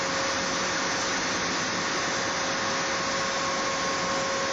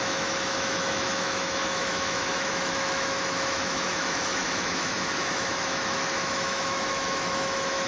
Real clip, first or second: first